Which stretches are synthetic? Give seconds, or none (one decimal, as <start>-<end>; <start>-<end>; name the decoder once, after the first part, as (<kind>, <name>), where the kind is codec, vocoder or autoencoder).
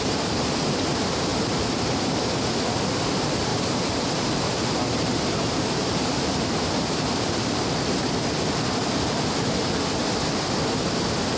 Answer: 1.3-2.2 (vocoder, BigVGAN v2); 3.5-7.9